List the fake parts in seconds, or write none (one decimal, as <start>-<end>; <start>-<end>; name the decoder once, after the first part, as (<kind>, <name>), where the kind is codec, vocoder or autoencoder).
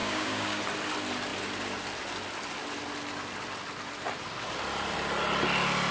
0.0-0.6 (codec, DAC)